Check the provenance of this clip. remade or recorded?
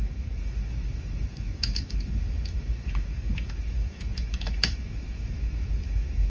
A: remade